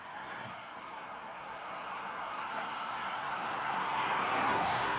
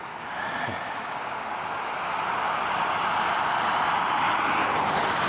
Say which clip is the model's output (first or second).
first